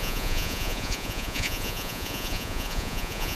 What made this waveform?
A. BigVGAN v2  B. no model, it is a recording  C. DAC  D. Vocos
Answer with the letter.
D